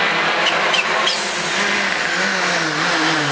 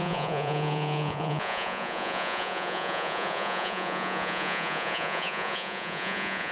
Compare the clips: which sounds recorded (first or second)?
first